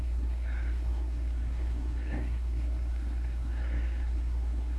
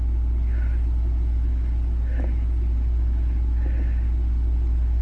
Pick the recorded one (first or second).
second